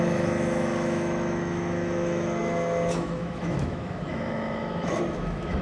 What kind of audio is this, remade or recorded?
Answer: remade